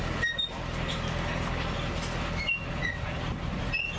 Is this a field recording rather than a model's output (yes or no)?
yes